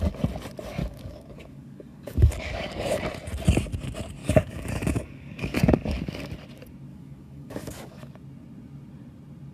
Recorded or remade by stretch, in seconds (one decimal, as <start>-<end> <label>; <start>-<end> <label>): 0.0-0.8 recorded; 0.8-3.0 remade; 3.0-4.2 recorded; 4.2-6.3 remade; 6.3-6.9 recorded; 6.9-8.1 remade; 8.1-9.5 recorded